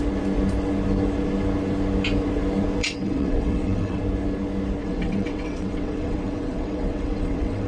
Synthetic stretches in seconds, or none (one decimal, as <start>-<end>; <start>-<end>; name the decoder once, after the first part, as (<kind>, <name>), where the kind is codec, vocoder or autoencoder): 2.8-4.0 (vocoder, WaveNeXt); 4.8-7.7